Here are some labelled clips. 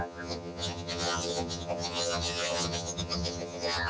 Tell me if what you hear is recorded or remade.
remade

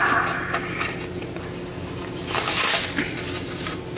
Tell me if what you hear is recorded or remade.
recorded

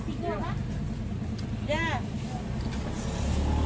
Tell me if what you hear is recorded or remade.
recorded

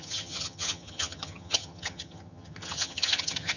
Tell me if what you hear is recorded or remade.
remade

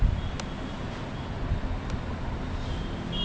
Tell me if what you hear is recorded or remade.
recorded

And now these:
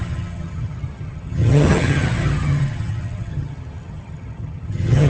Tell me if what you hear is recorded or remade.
remade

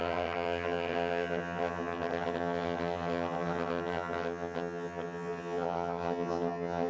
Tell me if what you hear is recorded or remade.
remade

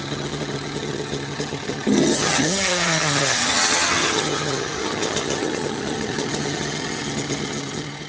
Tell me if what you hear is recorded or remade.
remade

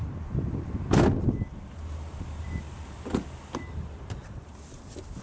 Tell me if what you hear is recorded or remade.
recorded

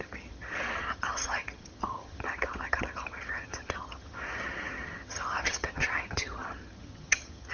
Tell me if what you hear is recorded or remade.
remade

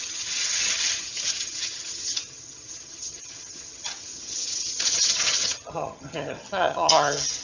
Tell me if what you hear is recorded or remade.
remade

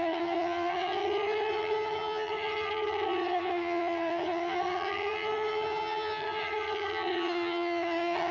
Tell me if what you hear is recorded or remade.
remade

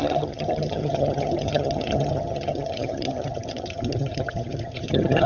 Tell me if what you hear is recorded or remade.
remade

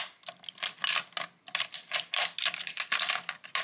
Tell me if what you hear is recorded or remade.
recorded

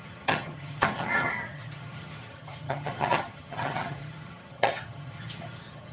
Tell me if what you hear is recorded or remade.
remade